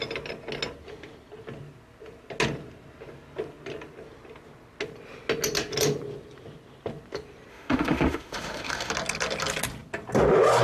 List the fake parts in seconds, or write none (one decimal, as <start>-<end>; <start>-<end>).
7.5-8.9